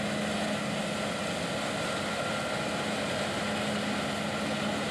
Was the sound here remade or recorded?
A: recorded